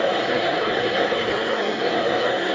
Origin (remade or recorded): remade